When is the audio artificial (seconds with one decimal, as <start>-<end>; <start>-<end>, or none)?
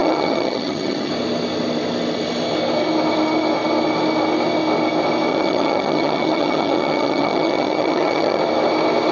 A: 0.0-1.1; 5.3-8.4